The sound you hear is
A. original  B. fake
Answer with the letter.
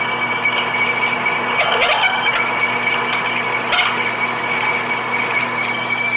A